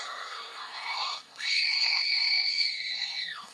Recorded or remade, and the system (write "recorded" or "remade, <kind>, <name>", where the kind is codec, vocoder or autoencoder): remade, codec, SNAC